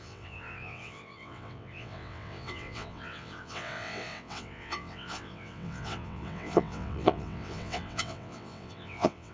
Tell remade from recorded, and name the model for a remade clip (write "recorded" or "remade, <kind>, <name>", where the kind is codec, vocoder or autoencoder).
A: remade, vocoder, WaveNeXt